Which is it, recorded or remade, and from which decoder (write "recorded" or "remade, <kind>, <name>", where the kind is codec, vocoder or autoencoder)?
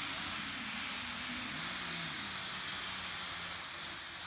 recorded